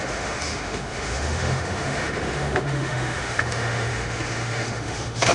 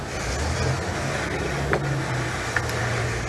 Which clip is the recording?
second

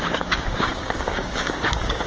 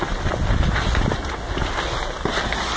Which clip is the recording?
second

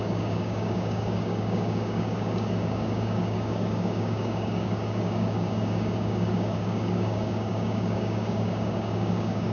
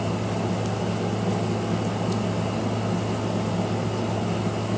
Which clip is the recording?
second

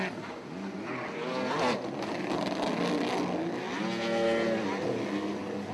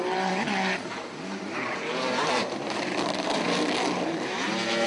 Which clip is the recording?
first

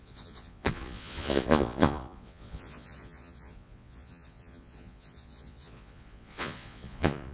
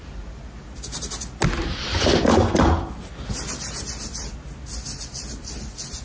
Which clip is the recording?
second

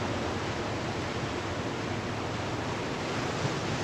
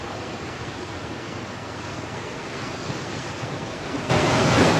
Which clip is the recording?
first